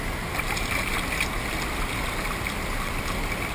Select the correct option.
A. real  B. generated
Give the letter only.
A